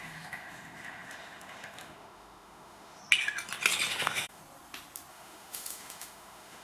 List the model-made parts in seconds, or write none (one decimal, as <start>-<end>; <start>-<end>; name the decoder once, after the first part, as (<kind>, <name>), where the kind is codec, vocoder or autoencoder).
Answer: 0.0-3.0 (autoencoder, DAC-VAE); 3.9-4.4; 5.1-6.6